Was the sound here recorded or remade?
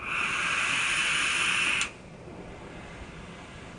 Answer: recorded